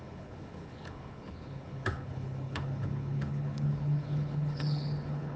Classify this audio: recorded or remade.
remade